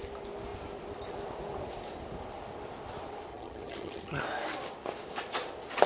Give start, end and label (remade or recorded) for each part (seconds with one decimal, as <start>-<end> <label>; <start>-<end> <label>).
0.0-3.3 recorded; 3.3-4.2 remade; 4.2-5.9 recorded

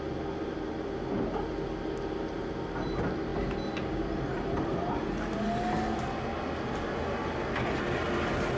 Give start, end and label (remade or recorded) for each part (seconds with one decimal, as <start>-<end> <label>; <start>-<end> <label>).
0.0-8.6 recorded

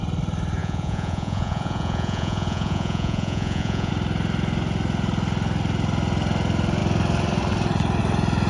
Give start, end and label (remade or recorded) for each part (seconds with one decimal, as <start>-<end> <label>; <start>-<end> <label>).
0.0-0.6 recorded; 0.6-3.9 remade; 3.9-8.5 recorded

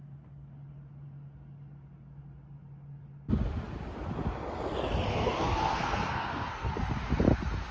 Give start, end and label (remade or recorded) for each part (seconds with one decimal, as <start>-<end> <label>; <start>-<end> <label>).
0.0-5.1 recorded; 5.1-6.7 remade; 6.7-7.7 recorded

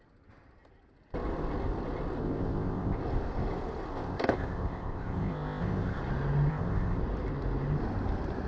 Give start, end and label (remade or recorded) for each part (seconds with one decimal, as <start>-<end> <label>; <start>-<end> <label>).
0.0-2.2 recorded; 2.2-3.0 remade; 3.0-3.9 recorded; 3.9-6.0 remade; 6.0-6.5 recorded; 6.5-7.0 remade; 7.0-8.5 recorded

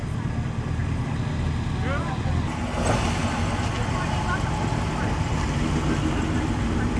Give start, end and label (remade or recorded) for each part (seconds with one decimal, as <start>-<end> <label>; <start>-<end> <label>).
0.0-7.0 recorded

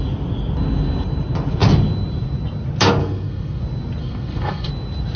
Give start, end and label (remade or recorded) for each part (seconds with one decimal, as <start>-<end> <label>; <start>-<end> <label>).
0.0-3.0 recorded; 3.0-3.6 remade; 3.6-4.0 recorded; 4.0-4.7 remade; 4.7-5.2 recorded